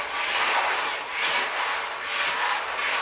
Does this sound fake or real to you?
real